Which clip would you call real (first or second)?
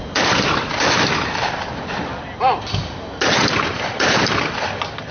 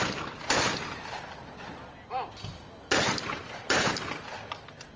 second